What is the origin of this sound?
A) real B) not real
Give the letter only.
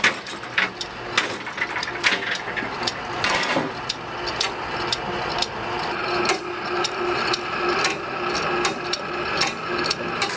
A